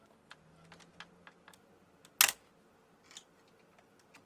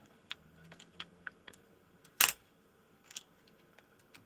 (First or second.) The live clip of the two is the first